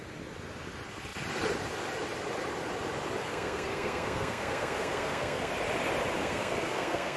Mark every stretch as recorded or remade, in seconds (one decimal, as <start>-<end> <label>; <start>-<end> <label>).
0.0-3.2 recorded; 3.2-5.5 remade; 5.5-6.2 recorded; 6.2-7.2 remade